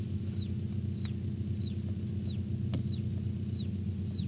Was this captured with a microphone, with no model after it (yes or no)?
yes